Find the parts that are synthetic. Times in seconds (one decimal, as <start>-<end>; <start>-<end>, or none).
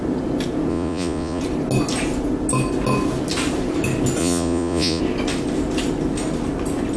0.7-1.4; 4.2-5.0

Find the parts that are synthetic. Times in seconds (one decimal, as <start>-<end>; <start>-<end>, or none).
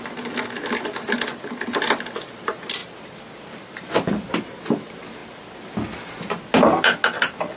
2.8-4.3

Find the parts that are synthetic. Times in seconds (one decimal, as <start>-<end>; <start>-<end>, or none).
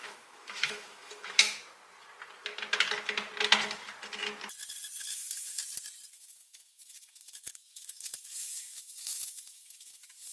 0.0-1.6; 5.0-5.6; 6.1-10.3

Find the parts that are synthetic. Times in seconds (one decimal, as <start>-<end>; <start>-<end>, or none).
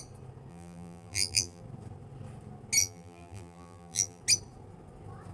0.5-1.6; 2.8-4.2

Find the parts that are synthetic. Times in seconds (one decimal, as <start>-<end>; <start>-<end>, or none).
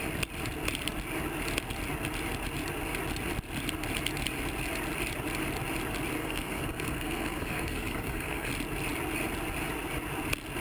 6.2-8.5